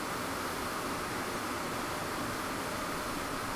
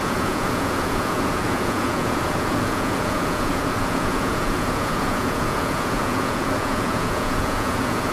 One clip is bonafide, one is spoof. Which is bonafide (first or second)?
first